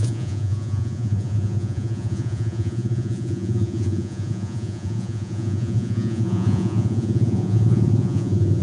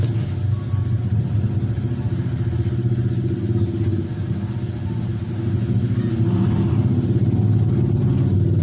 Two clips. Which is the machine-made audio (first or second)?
first